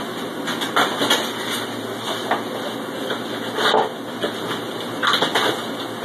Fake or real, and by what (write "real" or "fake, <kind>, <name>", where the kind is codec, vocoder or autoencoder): real